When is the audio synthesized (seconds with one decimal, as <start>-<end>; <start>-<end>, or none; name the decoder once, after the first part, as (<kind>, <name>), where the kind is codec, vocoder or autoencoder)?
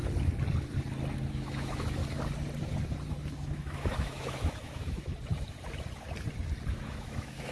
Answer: 1.3-2.0 (autoencoder, DAC-VAE); 3.1-5.1; 6.7-7.5